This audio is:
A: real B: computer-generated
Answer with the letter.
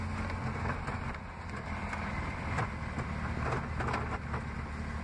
A